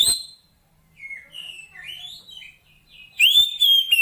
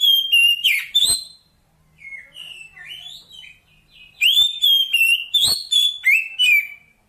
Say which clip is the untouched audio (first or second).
second